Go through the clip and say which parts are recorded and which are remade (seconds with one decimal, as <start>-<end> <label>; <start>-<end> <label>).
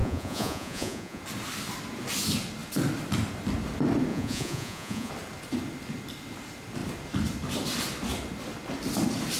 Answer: 0.0-1.2 remade; 1.2-4.1 recorded; 4.1-5.1 remade; 5.1-9.4 recorded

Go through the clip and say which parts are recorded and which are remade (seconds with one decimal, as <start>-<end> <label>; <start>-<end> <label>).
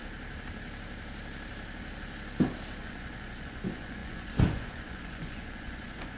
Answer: 0.0-2.8 recorded; 2.8-6.2 remade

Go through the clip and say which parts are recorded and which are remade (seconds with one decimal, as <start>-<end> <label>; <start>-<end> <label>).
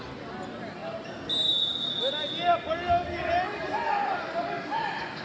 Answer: 0.0-5.2 recorded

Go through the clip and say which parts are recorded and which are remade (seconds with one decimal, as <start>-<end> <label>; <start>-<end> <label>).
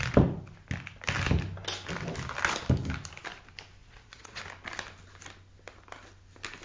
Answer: 0.0-3.8 recorded; 3.8-4.4 remade; 4.4-6.6 recorded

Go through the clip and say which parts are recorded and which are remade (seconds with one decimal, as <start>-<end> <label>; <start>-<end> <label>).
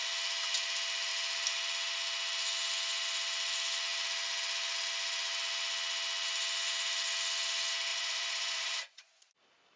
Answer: 0.0-7.9 recorded; 7.9-9.3 remade; 9.3-9.8 recorded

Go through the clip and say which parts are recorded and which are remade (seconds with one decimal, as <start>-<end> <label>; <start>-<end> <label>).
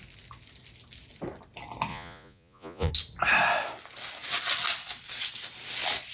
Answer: 0.0-1.9 recorded; 1.9-2.9 remade; 2.9-6.1 recorded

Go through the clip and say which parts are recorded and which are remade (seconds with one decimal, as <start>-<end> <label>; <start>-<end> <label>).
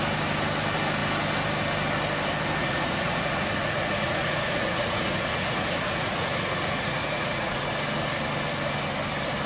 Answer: 0.0-2.6 recorded; 2.6-7.7 remade; 7.7-9.5 recorded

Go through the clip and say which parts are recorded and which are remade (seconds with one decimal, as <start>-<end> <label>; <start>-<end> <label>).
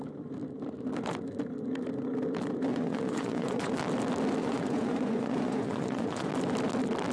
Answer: 0.0-2.7 recorded; 2.7-3.7 remade; 3.7-4.4 recorded; 4.4-6.3 remade; 6.3-7.1 recorded